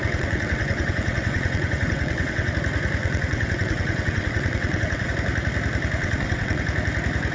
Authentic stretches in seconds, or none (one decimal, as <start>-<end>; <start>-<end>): 2.5-3.0; 5.1-6.0; 6.6-7.3